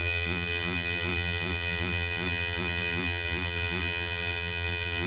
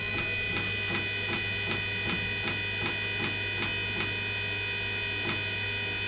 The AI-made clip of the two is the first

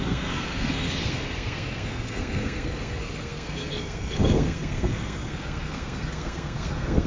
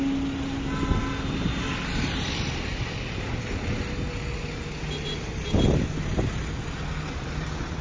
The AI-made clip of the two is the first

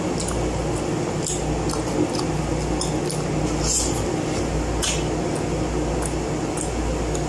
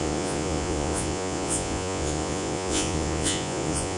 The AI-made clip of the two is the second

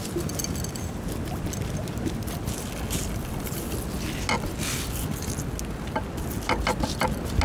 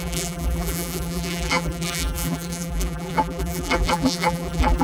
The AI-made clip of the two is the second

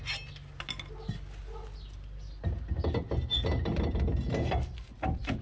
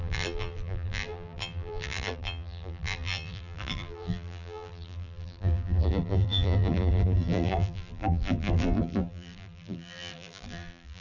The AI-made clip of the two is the second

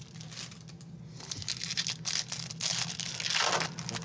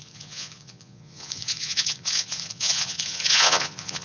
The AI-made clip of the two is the second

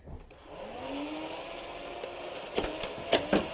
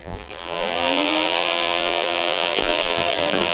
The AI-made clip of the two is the second